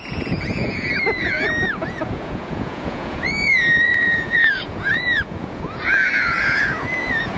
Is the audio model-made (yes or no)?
yes